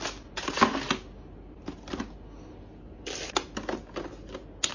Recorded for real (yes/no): yes